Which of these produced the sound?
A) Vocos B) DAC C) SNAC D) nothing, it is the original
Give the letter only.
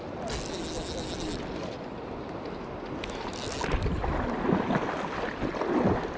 D